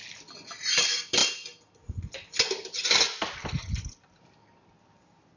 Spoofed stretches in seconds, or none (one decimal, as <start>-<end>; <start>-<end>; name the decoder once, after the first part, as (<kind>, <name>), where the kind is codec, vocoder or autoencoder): none